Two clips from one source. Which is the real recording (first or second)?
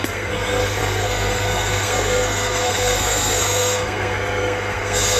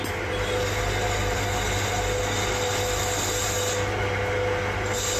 second